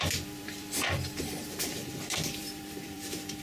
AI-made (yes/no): yes